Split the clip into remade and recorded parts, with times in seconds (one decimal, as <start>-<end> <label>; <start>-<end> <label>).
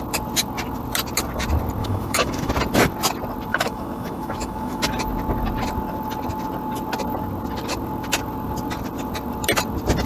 0.0-1.8 recorded; 1.8-2.5 remade; 2.5-3.5 recorded; 3.5-4.8 remade; 4.8-10.1 recorded